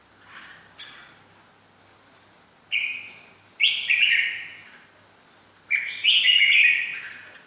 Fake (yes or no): no